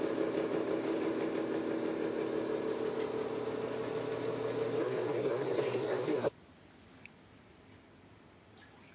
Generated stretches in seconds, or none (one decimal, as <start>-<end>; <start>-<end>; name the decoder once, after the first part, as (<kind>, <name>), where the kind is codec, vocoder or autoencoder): 4.8-6.3 (codec, SNAC)